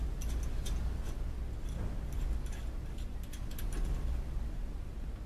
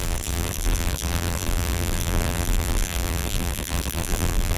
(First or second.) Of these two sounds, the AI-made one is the second